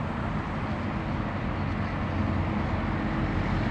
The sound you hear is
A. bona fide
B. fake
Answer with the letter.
A